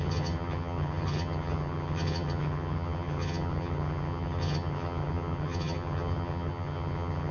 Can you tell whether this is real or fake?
fake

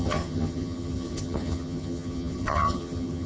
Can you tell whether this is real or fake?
fake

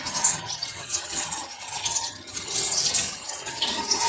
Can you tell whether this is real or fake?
fake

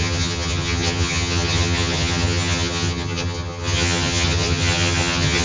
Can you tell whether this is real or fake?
fake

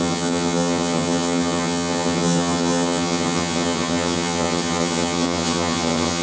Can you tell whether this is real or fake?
fake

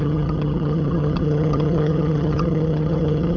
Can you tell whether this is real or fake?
fake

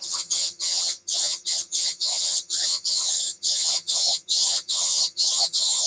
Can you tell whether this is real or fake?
fake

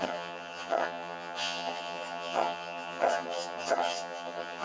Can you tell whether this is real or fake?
fake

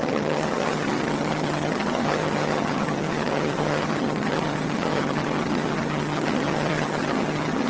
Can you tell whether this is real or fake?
fake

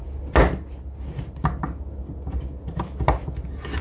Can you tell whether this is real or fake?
real